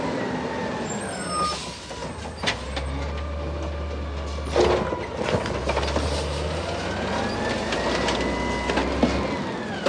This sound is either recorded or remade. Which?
recorded